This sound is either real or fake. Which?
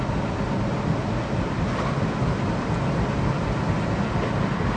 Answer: real